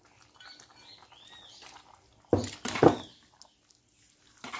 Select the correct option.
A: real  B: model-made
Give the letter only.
A